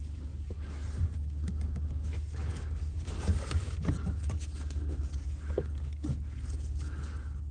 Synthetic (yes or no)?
yes